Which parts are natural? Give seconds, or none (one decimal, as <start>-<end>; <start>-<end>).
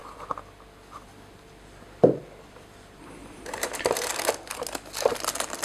0.0-3.2; 4.1-5.6